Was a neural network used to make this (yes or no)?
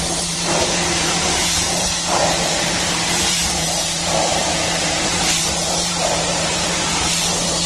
yes